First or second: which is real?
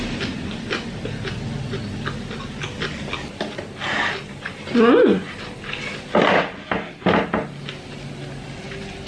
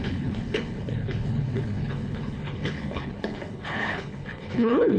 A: first